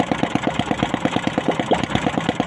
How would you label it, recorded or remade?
recorded